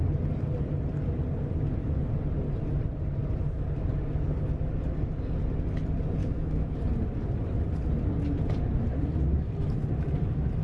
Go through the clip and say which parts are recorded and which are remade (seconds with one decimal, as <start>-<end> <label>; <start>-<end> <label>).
0.0-6.2 recorded; 6.2-6.8 remade; 6.8-10.6 recorded